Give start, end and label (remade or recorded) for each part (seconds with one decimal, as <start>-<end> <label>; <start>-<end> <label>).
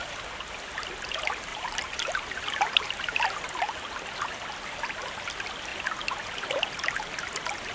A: 0.0-1.5 recorded; 1.5-3.5 remade; 3.5-7.7 recorded